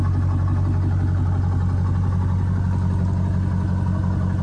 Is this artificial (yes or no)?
no